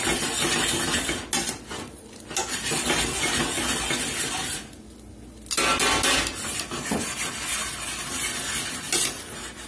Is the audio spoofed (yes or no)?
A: no